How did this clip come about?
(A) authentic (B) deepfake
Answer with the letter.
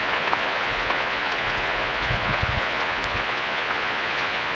B